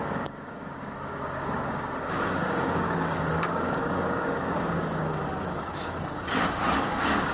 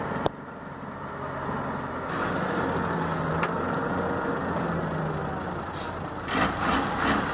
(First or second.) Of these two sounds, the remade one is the first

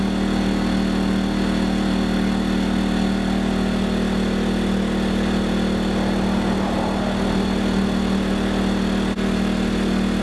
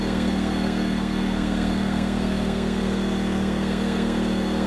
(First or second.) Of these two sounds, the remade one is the second